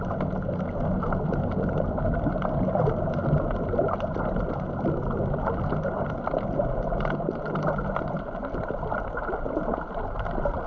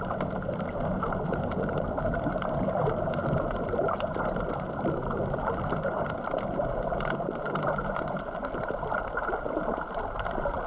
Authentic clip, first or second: first